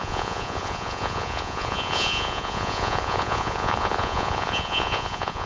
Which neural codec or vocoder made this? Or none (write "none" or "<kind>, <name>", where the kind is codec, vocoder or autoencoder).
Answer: vocoder, Vocos